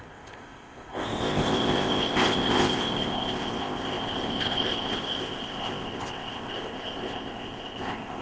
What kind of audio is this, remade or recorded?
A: remade